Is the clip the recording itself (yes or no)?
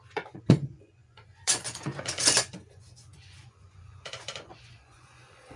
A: no